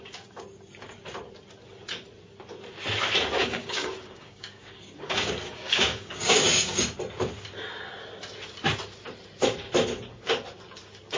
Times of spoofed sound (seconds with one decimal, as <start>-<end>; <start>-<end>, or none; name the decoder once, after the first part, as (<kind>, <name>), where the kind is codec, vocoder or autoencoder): 3.4-6.8 (codec, DAC)